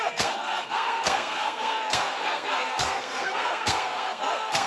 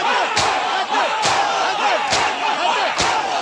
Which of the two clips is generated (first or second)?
first